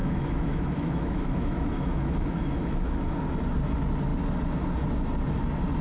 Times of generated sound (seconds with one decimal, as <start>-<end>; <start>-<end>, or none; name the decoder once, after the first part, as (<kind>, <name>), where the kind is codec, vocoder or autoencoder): 0.0-3.0 (autoencoder, DAC-VAE)